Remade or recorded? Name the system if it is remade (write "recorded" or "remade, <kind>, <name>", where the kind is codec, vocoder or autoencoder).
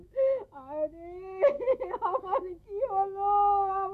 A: remade, autoencoder, DAC-VAE